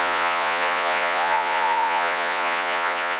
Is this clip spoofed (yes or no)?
yes